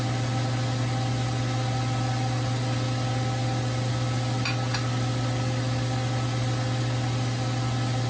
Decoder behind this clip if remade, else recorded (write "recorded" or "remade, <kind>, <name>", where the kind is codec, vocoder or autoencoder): recorded